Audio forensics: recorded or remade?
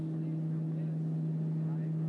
recorded